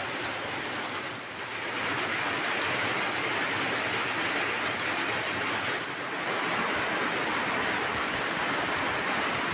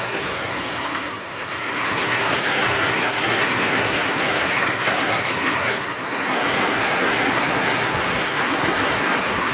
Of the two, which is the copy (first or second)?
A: second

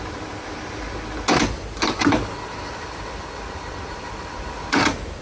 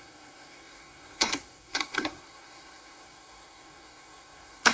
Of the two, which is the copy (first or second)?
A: second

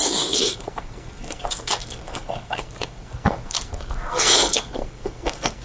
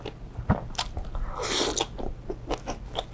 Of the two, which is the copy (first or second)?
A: first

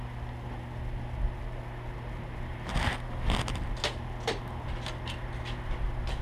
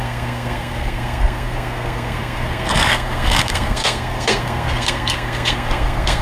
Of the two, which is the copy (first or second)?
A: second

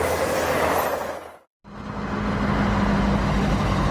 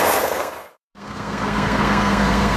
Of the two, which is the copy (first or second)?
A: second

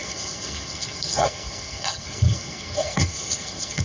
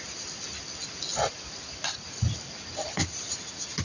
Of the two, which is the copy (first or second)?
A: first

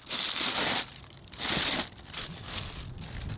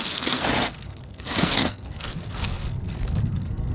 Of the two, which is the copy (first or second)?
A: second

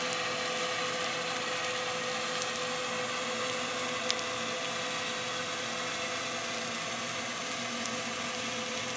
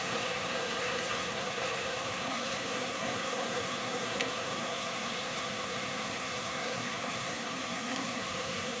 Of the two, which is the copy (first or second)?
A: second